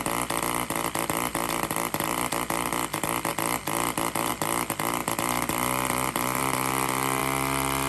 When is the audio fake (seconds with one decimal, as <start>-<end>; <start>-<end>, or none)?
1.3-2.3; 7.2-7.9